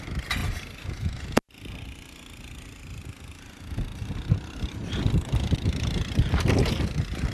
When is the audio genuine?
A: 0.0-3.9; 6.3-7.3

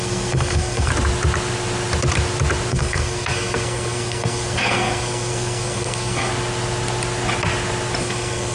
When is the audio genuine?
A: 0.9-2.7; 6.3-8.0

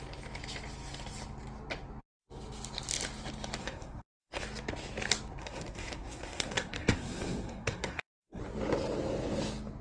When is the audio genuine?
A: 0.0-3.6; 4.4-5.4; 8.4-9.8

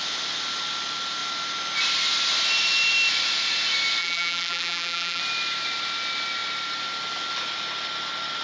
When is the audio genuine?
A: 0.0-4.0; 5.2-8.4

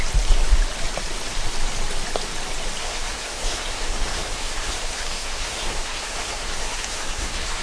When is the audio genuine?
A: 0.0-2.8

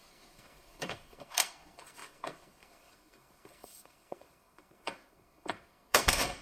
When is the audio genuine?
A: none